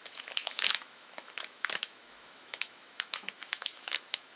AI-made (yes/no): yes